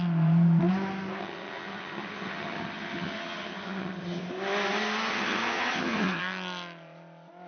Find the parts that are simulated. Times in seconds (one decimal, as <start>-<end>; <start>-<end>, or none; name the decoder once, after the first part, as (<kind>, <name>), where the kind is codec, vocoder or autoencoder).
1.2-4.2 (vocoder, HiFi-GAN); 5.1-6.2